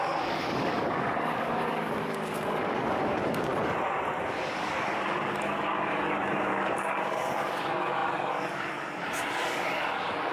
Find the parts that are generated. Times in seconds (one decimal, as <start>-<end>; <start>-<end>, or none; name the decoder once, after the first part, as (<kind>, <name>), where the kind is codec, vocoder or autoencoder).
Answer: 0.0-3.5 (codec, DAC); 4.2-10.3